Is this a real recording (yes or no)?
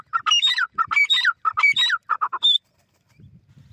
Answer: no